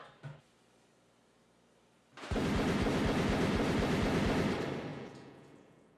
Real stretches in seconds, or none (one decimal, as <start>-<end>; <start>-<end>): 0.0-4.9